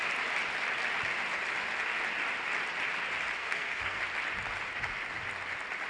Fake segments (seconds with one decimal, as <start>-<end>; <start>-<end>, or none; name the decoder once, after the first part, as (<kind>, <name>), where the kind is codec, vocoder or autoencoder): 3.4-4.0 (codec, SNAC)